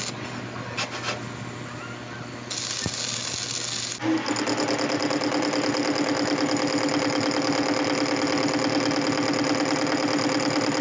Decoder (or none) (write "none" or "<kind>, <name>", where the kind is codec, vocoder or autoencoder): none